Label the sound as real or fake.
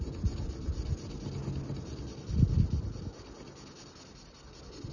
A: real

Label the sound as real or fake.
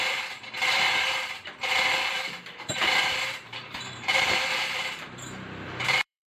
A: fake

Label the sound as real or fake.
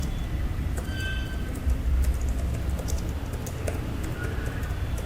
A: real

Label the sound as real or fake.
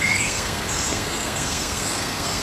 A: fake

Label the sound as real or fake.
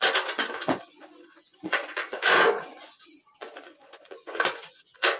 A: fake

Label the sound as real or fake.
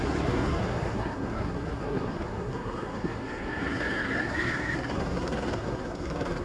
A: fake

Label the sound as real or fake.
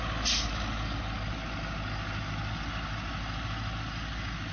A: real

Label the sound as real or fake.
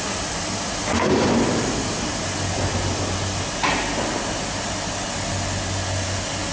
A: real